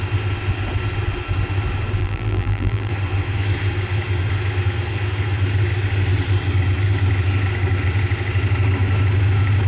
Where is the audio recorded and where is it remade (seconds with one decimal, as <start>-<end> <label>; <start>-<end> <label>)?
0.0-2.0 recorded; 2.0-2.9 remade; 2.9-9.7 recorded